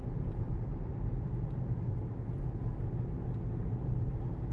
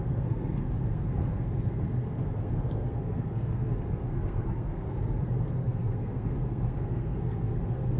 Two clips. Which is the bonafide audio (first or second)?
first